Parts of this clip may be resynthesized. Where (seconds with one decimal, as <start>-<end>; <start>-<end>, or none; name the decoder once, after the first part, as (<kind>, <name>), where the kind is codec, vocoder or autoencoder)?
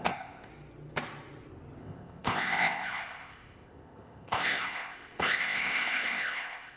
0.0-0.5 (codec, ZipCodec); 1.8-6.8